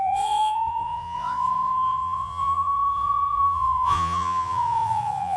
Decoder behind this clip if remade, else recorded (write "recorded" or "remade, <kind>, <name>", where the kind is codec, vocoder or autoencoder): remade, vocoder, Vocos